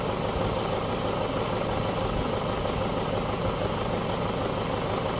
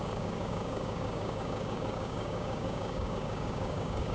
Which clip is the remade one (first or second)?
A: second